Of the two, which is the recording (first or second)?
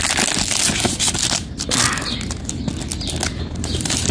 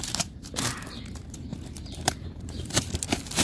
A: first